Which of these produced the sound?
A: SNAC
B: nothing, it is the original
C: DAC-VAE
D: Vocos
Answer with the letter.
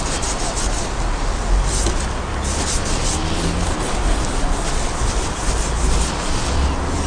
B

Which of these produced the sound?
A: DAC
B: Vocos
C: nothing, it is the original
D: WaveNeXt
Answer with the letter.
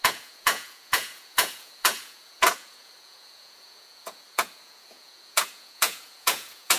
B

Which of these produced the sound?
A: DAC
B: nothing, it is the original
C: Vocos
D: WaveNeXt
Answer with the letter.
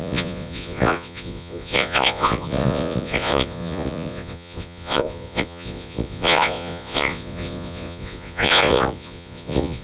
C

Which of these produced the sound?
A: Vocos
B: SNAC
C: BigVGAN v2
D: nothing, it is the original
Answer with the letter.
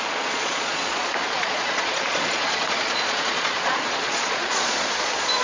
A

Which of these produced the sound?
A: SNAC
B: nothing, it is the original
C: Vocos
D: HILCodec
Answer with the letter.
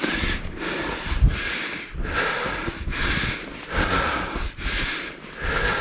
B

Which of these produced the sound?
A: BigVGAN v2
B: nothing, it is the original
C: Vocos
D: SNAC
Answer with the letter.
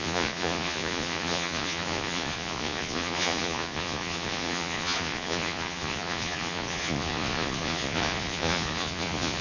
C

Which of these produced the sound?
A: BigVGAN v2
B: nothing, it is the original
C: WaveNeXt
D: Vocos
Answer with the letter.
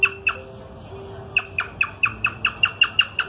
B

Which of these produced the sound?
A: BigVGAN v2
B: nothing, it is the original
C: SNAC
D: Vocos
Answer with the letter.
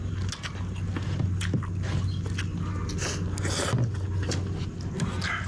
B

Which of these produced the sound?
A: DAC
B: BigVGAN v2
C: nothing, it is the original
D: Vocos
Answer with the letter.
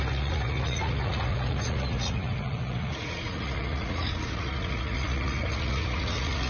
D